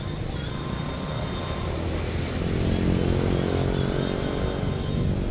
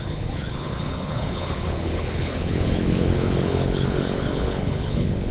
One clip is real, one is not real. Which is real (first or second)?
first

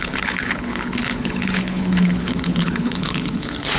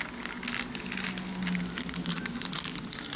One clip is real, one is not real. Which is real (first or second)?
second